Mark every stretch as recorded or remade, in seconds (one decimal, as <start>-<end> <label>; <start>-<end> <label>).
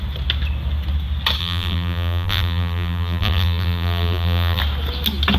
0.0-1.4 recorded; 1.4-4.6 remade; 4.6-5.4 recorded